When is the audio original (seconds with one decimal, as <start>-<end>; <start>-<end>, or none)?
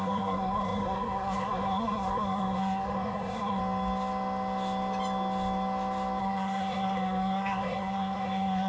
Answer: 3.6-6.2